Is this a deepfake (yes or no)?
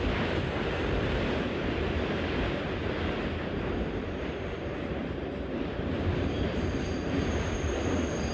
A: yes